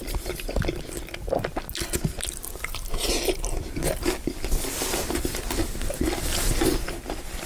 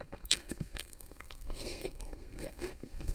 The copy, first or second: second